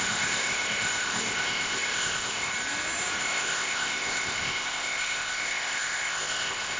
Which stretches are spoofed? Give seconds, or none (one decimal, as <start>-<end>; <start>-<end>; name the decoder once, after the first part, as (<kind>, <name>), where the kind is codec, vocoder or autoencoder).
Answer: 0.0-2.5 (codec, ZipCodec); 3.2-6.8